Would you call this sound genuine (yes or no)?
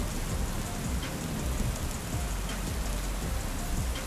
yes